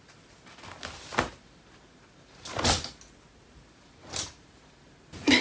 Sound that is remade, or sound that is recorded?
recorded